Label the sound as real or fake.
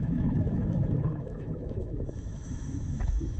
fake